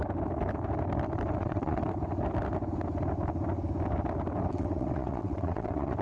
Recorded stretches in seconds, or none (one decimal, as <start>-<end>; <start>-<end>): 0.0-1.4; 1.8-4.5